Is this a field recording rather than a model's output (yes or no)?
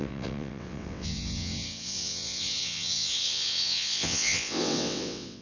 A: no